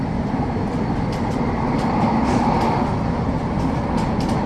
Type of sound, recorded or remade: recorded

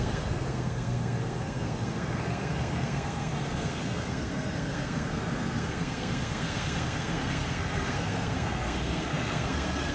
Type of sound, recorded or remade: remade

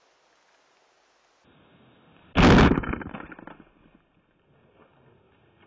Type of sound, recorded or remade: recorded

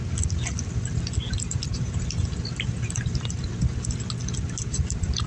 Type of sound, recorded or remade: recorded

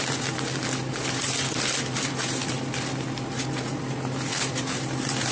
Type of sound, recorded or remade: recorded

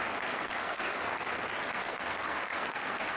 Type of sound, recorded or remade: remade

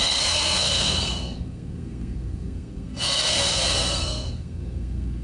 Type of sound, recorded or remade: remade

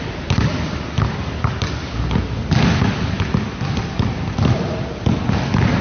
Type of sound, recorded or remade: recorded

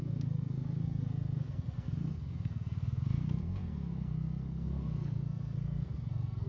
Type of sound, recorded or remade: remade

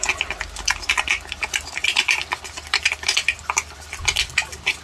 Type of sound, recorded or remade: recorded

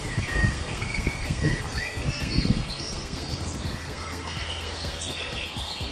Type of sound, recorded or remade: remade